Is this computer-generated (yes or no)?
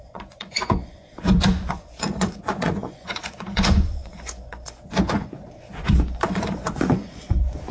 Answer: yes